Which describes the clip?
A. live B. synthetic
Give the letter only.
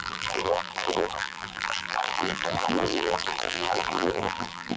B